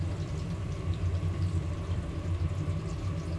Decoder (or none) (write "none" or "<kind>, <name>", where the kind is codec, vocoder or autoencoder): vocoder, BigVGAN v2